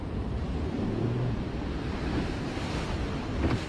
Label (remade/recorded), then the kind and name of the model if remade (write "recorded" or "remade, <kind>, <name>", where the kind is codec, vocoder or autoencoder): remade, vocoder, BigVGAN v2